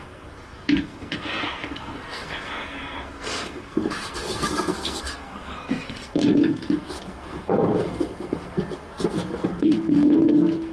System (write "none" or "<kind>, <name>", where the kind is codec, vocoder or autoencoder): codec, SNAC